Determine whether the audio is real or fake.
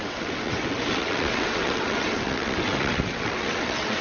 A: fake